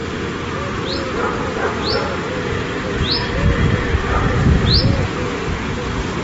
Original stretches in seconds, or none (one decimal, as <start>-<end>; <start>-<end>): 0.0-6.2